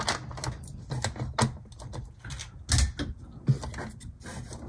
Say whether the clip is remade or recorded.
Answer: recorded